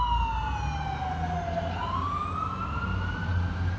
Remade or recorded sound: recorded